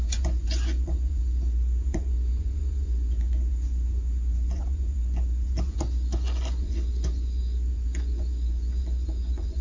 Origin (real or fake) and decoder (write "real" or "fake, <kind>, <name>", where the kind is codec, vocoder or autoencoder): fake, vocoder, Vocos